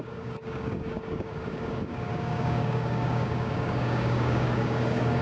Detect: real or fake fake